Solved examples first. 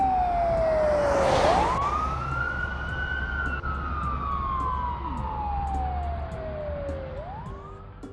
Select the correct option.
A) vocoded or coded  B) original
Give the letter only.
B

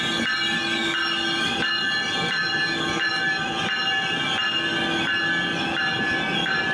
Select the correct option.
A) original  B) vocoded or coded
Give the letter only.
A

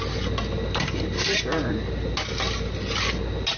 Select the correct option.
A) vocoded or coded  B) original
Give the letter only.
B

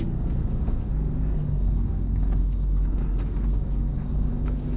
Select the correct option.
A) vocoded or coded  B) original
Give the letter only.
A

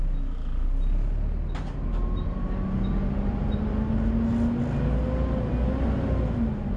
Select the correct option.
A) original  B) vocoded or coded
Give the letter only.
A